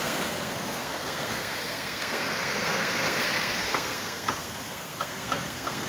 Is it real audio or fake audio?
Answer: fake